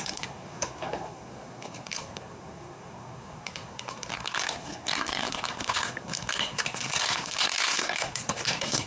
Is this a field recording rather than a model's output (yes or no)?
no